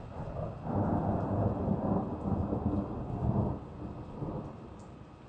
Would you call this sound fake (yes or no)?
no